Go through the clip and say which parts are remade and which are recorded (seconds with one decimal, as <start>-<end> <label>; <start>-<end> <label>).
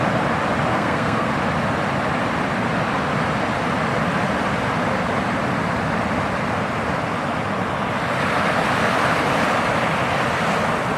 0.0-0.7 recorded; 0.7-1.3 remade; 1.3-11.0 recorded